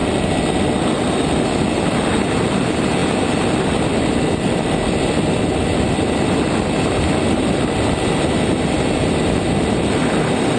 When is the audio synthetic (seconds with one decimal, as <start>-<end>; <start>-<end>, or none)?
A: none